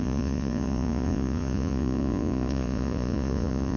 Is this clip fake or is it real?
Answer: fake